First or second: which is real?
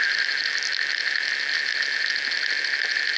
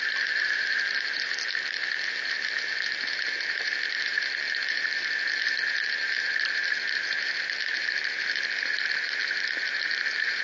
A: first